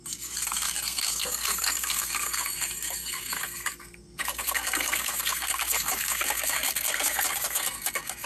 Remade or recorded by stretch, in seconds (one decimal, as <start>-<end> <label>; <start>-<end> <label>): 0.0-8.3 remade